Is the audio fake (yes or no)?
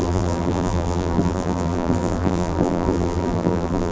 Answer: yes